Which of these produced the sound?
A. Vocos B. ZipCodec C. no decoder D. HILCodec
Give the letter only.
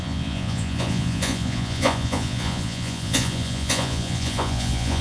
A